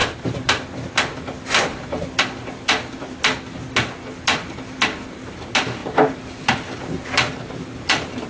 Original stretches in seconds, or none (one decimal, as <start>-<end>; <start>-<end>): 0.0-8.3